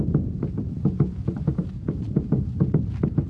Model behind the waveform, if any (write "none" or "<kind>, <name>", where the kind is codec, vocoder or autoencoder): none